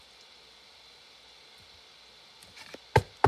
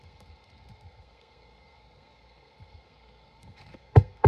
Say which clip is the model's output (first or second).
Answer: second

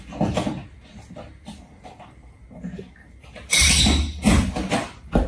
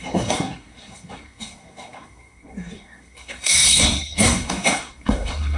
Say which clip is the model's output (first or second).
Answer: second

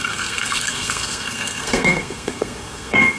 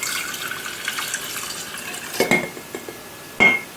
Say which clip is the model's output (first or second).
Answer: first